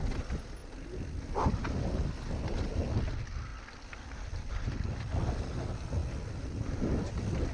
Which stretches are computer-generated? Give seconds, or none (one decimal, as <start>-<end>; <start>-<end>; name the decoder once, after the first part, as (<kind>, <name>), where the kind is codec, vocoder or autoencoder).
none